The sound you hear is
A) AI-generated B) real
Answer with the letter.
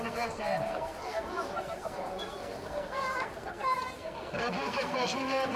A